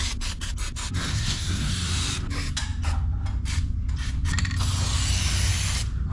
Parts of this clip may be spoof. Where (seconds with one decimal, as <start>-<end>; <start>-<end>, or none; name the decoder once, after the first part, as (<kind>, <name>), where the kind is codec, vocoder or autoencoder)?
1.1-1.7 (codec, SNAC)